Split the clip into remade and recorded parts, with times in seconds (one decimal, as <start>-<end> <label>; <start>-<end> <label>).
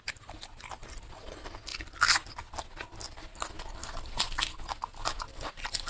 0.0-5.9 recorded